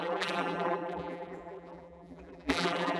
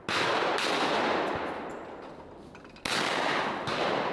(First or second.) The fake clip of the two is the first